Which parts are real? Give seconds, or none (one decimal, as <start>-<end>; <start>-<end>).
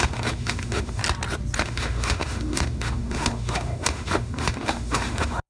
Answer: 1.0-1.6